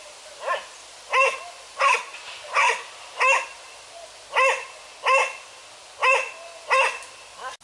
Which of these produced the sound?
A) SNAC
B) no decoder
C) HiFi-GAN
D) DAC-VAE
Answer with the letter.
B